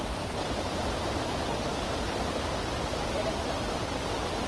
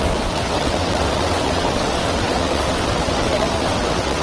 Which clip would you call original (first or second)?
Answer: first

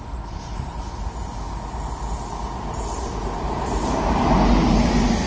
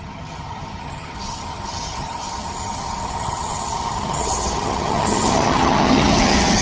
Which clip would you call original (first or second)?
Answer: first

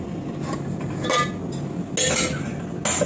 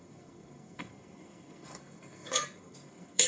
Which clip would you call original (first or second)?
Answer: first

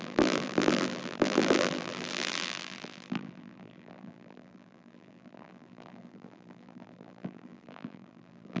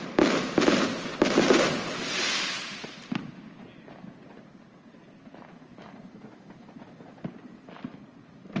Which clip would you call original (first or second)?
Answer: second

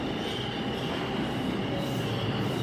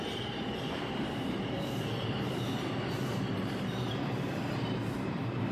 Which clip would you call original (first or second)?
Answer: first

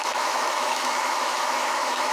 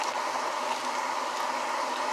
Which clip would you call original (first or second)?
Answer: second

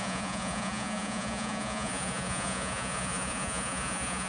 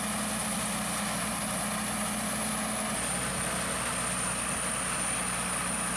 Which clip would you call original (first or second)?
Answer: second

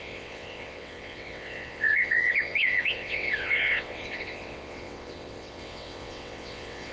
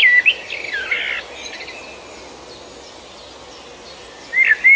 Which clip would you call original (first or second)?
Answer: second